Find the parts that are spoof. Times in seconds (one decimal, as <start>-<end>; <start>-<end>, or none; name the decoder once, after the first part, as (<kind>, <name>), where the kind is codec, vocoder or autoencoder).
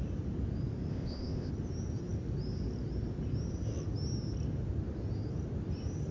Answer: 0.9-1.5 (codec, ZipCodec)